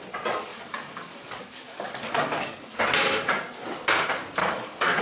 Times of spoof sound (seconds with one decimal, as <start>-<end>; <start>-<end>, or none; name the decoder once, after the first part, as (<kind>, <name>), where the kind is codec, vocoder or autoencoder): 0.5-2.8 (codec, DAC); 4.4-5.0